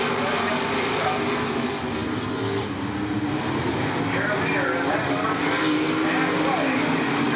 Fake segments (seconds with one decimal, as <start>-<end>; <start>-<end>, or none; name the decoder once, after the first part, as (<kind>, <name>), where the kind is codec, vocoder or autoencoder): none

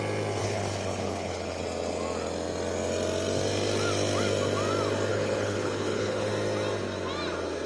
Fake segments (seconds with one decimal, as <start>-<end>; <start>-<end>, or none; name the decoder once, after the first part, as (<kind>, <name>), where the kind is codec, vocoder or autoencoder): 0.4-1.6 (codec, HILCodec); 5.1-6.3

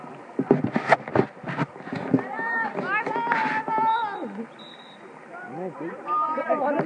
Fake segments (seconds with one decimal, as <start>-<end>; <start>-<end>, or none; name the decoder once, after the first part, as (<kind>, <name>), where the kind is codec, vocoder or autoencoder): none